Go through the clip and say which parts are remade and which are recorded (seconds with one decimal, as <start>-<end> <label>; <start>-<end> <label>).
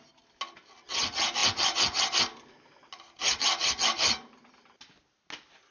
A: 0.0-5.7 recorded